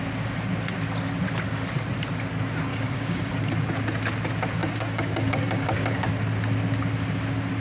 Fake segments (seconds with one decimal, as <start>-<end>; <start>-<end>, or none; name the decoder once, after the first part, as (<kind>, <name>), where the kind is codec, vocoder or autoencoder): 2.7-3.3 (codec, DAC); 4.6-6.1